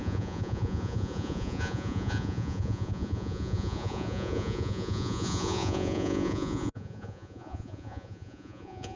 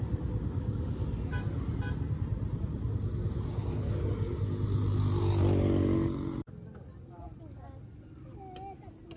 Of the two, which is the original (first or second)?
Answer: second